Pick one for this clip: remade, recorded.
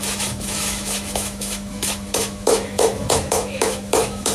remade